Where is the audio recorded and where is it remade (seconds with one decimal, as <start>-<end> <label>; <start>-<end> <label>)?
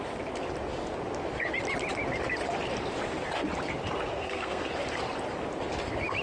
0.0-4.1 recorded; 4.1-4.7 remade; 4.7-6.2 recorded